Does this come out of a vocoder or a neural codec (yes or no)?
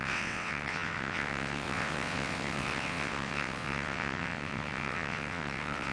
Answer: yes